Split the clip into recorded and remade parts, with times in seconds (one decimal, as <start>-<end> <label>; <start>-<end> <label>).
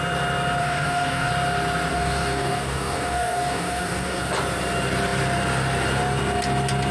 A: 0.0-0.6 recorded; 0.6-1.3 remade; 1.3-1.9 recorded; 1.9-4.2 remade; 4.2-6.9 recorded